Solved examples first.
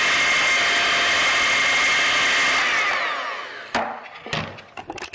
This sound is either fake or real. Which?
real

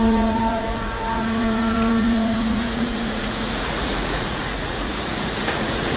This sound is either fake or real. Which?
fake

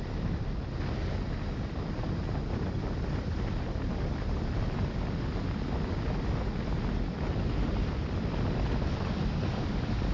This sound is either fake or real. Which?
real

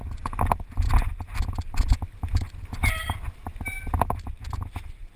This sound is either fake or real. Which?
real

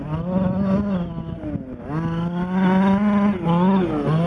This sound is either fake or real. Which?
real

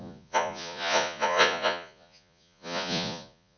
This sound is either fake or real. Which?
fake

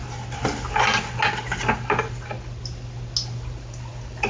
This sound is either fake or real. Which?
real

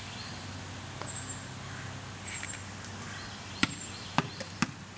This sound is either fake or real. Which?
real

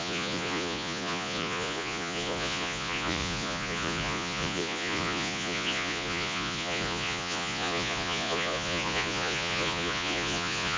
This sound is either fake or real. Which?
fake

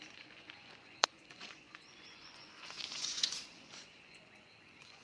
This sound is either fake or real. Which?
fake